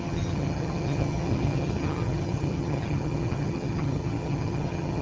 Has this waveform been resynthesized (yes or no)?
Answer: yes